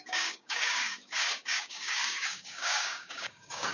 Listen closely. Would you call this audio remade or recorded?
remade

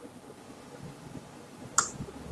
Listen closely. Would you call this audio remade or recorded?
recorded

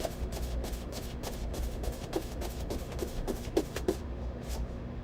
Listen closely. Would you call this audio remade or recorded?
remade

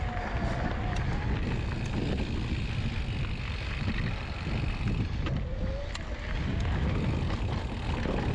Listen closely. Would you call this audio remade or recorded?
recorded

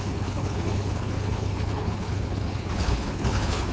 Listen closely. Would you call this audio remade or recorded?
remade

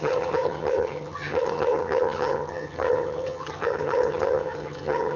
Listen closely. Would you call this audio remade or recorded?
remade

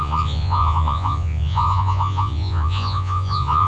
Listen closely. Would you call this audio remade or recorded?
remade